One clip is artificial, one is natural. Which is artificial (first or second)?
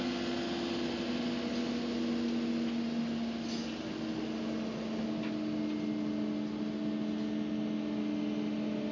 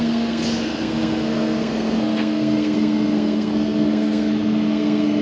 second